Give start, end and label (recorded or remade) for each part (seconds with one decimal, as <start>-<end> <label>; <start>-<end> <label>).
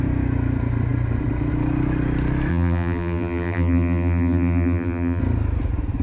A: 0.0-2.5 recorded; 2.5-5.2 remade; 5.2-6.0 recorded